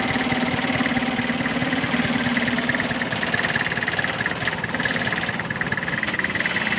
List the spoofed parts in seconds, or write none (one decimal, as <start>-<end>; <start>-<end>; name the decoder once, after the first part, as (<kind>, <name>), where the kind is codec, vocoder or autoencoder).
none